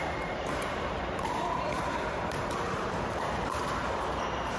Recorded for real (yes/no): no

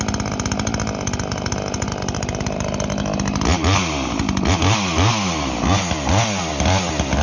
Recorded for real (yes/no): yes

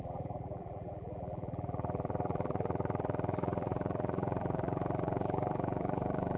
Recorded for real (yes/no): no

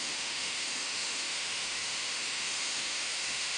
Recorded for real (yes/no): no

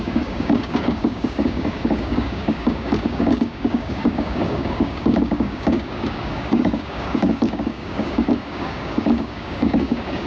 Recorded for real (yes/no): no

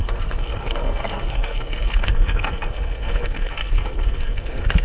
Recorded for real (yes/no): no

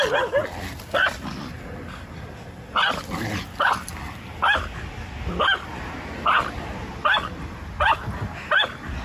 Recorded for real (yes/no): yes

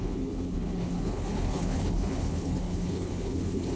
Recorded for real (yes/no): no